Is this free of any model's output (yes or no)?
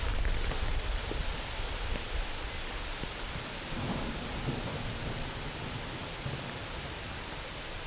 yes